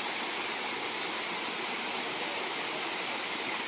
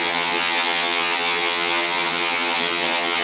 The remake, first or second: second